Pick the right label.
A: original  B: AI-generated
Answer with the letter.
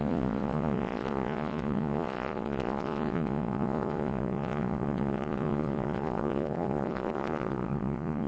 B